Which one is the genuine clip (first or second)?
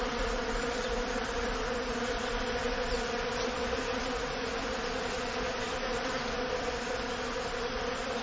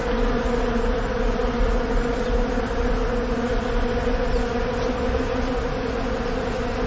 second